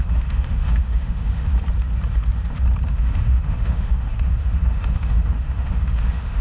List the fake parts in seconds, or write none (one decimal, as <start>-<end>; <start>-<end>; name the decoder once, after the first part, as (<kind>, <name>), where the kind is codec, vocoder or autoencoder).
0.0-1.5 (autoencoder, DAC-VAE); 2.9-6.4